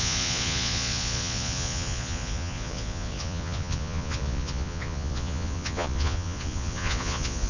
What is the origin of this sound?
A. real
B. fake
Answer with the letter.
B